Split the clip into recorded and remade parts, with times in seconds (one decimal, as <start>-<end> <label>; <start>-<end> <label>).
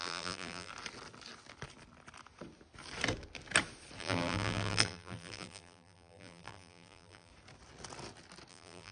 0.0-0.7 remade; 0.7-4.0 recorded; 4.0-7.3 remade; 7.3-8.5 recorded; 8.5-8.9 remade